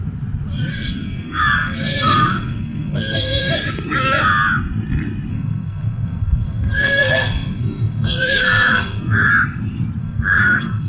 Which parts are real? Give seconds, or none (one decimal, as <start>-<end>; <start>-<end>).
0.0-0.7; 3.5-5.3; 9.3-10.0